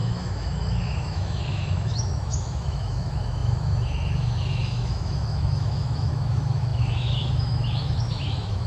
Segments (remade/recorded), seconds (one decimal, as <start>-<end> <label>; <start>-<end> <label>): 0.0-8.7 remade